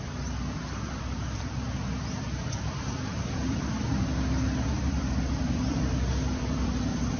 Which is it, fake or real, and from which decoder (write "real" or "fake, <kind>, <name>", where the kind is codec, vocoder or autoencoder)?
fake, vocoder, BigVGAN v2